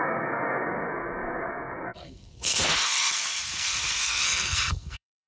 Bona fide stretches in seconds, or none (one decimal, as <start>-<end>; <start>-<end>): none